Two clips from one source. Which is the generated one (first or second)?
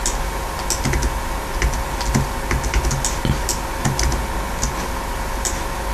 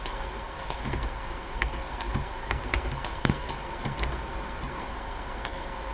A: second